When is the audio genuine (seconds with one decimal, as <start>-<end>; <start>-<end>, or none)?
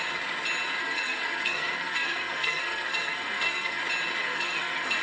0.0-0.8; 3.8-4.2